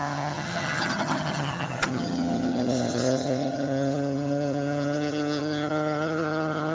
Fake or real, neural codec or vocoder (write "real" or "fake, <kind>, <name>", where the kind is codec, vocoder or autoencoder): fake, vocoder, HiFi-GAN